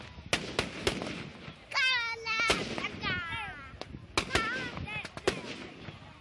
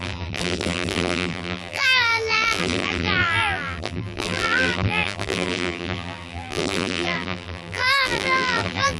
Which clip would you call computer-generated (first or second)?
second